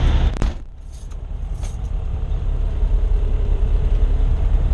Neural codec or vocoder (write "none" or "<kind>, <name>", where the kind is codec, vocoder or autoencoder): vocoder, BigVGAN v2